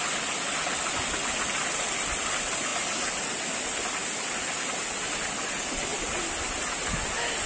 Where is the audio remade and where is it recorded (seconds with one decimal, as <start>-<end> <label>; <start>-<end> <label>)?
0.0-7.5 recorded